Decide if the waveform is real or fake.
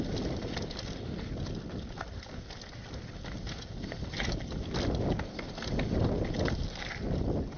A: real